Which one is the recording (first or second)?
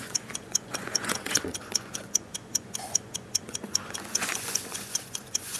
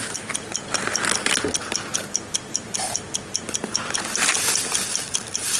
second